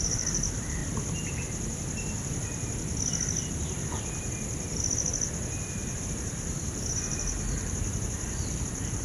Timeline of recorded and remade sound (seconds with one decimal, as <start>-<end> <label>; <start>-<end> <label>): 0.0-0.8 remade; 0.8-6.0 recorded; 6.0-9.0 remade